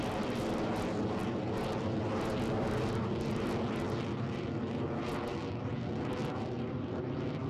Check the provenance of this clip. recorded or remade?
recorded